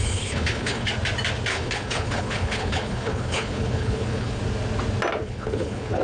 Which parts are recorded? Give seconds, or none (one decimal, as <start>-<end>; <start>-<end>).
0.9-1.5; 4.4-5.2